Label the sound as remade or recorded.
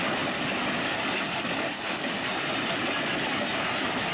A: recorded